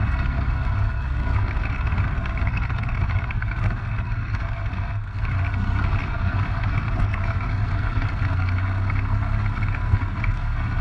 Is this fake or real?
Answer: fake